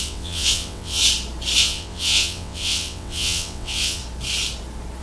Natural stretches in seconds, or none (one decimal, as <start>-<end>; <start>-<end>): 1.0-1.6; 4.0-5.0